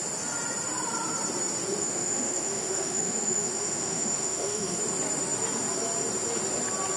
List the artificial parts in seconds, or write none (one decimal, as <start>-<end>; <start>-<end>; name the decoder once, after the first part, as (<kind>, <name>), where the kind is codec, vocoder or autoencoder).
1.8-4.8 (autoencoder, DAC-VAE)